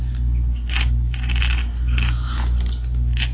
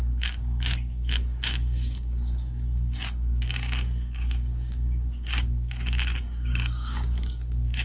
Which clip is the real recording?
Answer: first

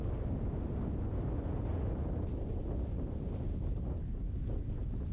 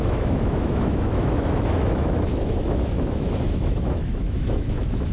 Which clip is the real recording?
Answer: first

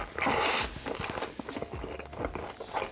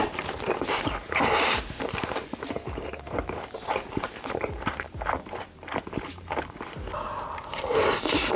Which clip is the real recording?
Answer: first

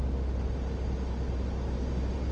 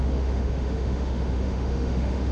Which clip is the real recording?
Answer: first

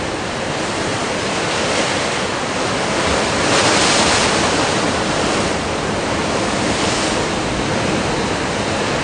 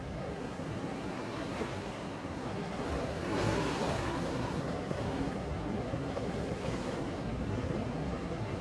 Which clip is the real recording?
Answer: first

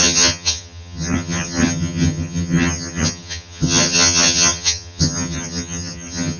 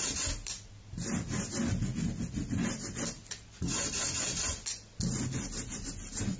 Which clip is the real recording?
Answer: second